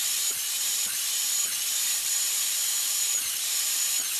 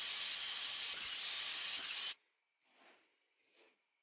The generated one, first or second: first